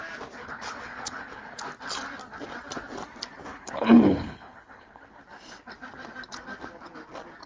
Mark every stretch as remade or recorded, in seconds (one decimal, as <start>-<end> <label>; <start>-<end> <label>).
0.0-0.4 recorded; 0.4-1.6 remade; 1.6-3.5 recorded; 3.5-5.2 remade; 5.2-7.5 recorded

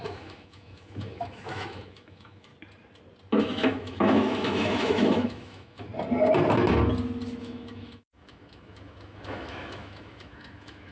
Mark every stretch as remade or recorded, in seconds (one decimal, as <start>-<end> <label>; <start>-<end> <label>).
0.0-2.5 remade; 2.5-3.4 recorded; 3.4-5.9 remade; 5.9-7.4 recorded; 7.4-10.9 remade